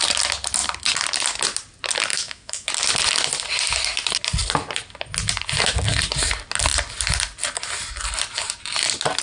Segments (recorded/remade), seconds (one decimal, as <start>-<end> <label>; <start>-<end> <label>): 0.0-2.1 recorded; 2.1-2.7 remade; 2.7-9.2 recorded